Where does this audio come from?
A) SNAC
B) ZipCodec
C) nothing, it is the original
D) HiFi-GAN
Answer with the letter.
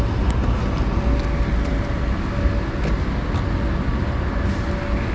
C